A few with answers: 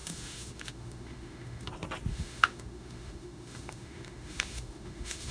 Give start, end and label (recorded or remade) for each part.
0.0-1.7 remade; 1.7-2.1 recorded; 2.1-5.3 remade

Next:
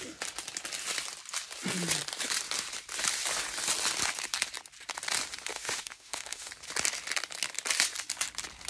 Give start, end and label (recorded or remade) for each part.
0.0-5.5 recorded; 5.5-6.5 remade; 6.5-8.7 recorded